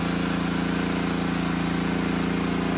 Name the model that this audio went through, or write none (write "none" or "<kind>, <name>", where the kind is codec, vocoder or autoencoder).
none